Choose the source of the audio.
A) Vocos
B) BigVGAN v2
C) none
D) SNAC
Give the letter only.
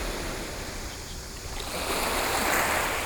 B